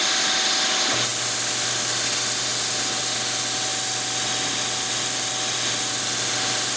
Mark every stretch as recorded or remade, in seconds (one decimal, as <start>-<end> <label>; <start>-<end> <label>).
0.0-6.8 recorded